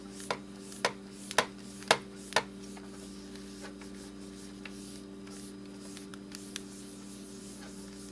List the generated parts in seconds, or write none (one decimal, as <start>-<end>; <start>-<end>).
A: none